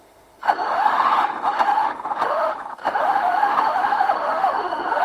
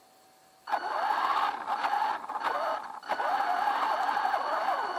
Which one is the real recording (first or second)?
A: second